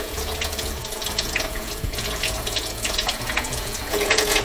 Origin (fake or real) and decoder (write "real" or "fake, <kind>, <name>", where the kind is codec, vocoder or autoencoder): fake, vocoder, Vocos